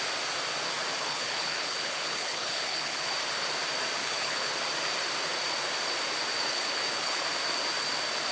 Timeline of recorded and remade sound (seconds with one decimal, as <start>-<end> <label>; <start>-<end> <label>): 0.0-1.0 recorded; 1.0-3.1 remade; 3.1-4.0 recorded; 4.0-4.5 remade; 4.5-6.5 recorded; 6.5-7.2 remade; 7.2-8.3 recorded